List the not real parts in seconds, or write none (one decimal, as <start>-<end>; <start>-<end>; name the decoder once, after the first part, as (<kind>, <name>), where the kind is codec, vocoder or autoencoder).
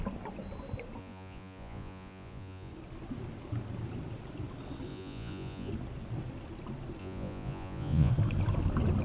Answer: 1.0-2.7 (vocoder, Vocos); 4.9-5.7; 7.0-8.1